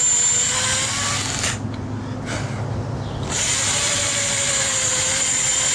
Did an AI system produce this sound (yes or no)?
no